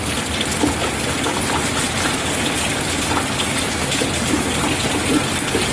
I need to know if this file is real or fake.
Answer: real